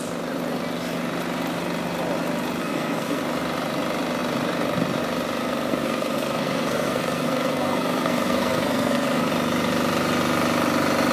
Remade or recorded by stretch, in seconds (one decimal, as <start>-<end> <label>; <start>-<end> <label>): 0.0-2.6 recorded; 2.6-3.2 remade; 3.2-5.4 recorded; 5.4-9.3 remade; 9.3-11.1 recorded